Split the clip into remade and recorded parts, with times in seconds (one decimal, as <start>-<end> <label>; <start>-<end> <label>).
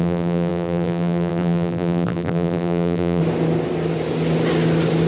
0.0-3.2 remade; 3.2-5.1 recorded